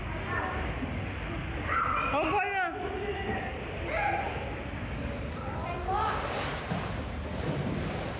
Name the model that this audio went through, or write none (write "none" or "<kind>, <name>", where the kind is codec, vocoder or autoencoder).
none